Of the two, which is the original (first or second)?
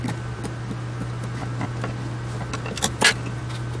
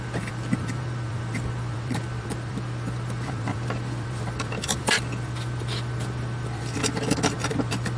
first